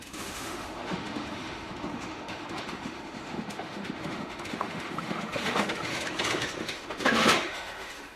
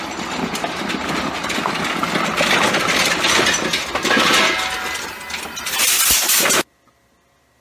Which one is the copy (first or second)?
first